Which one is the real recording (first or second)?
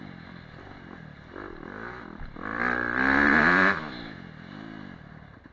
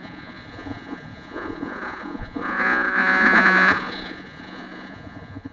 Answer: first